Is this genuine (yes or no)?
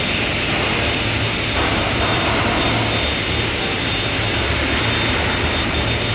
yes